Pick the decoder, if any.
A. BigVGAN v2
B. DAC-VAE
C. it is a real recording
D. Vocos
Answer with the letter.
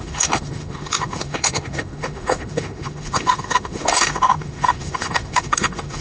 B